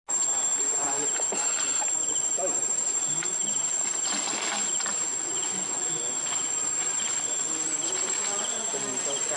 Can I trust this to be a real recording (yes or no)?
yes